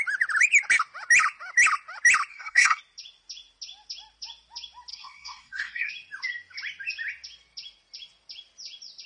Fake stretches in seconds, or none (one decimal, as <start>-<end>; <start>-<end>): 2.3-2.8; 4.9-5.9